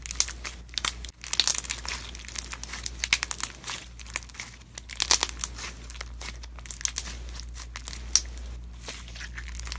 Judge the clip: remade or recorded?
recorded